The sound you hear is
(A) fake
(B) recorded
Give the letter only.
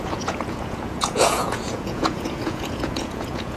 A